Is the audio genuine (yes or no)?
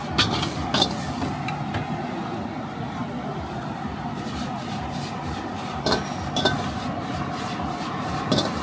yes